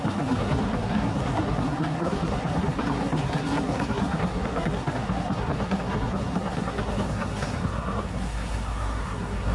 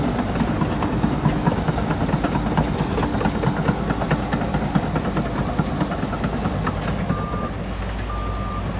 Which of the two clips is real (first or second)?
second